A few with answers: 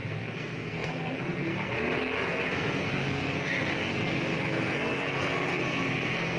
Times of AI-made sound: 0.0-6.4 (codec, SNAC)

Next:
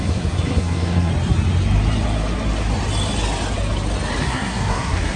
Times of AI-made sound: 0.0-1.1 (codec, SNAC); 4.2-5.2

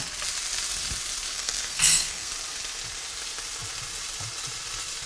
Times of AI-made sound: 1.3-2.3 (codec, SNAC)

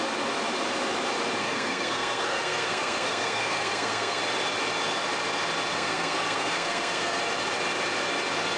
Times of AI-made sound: 1.4-4.2 (codec, SNAC); 5.7-7.2